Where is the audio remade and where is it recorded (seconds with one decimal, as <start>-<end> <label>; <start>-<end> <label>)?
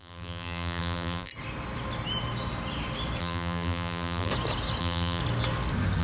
0.0-1.3 remade; 1.3-3.2 recorded; 3.2-4.3 remade; 4.3-4.8 recorded; 4.8-5.2 remade; 5.2-6.0 recorded